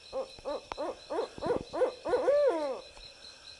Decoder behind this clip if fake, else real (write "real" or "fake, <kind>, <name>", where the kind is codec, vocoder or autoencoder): real